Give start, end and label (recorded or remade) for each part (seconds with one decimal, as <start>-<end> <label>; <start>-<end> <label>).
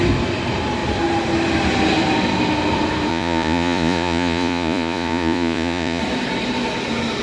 0.0-3.1 recorded; 3.1-6.0 remade; 6.0-7.2 recorded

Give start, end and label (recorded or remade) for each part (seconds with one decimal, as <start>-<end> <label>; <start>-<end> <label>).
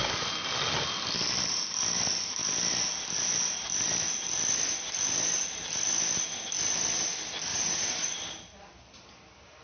0.0-7.5 recorded; 7.5-8.1 remade; 8.1-9.6 recorded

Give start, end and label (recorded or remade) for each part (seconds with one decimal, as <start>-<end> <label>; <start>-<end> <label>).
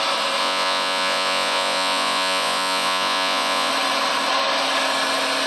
0.0-0.4 recorded; 0.4-3.7 remade; 3.7-5.5 recorded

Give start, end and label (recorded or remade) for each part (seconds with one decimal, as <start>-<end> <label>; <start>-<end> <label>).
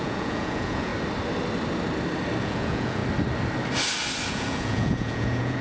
0.0-0.9 remade; 0.9-2.4 recorded; 2.4-3.0 remade; 3.0-4.3 recorded; 4.3-5.6 remade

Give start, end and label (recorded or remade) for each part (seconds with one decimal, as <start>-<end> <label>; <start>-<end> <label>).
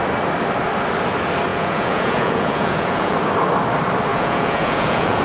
0.0-1.5 recorded; 1.5-3.2 remade; 3.2-4.1 recorded; 4.1-5.2 remade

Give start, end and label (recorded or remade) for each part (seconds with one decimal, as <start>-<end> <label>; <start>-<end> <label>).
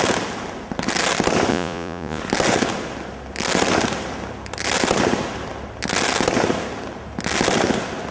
0.0-1.5 recorded; 1.5-2.2 remade; 2.2-8.1 recorded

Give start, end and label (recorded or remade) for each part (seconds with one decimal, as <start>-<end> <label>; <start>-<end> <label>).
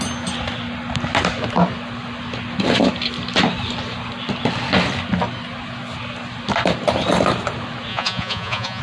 0.0-7.9 recorded; 7.9-8.8 remade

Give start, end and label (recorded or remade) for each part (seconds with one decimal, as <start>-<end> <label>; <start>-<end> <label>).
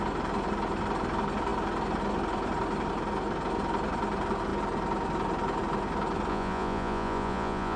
0.0-6.3 recorded; 6.3-7.8 remade